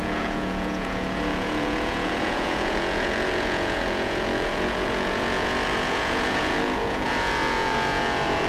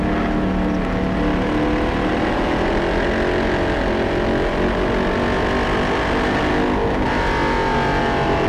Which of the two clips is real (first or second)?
second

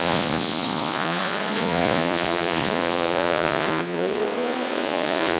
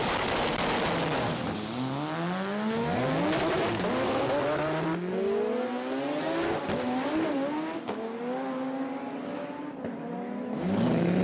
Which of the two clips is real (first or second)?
second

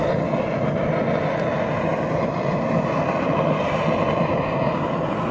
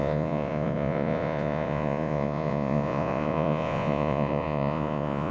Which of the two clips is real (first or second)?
first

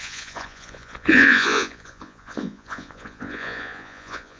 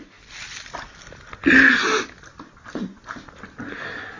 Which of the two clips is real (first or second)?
second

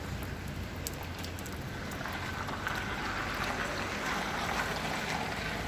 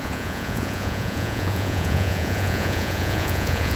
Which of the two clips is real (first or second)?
first